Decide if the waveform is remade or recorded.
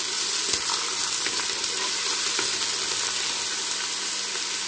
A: recorded